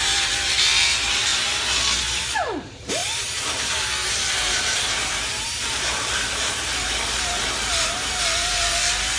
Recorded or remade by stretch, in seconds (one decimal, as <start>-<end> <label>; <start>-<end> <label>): 0.0-1.3 remade; 1.3-2.6 recorded; 2.6-9.2 remade